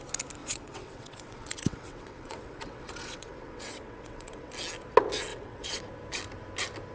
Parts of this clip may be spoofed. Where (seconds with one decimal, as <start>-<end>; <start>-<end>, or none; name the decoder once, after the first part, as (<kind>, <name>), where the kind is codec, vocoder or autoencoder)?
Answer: 0.4-4.5 (vocoder, WaveNeXt); 5.3-5.8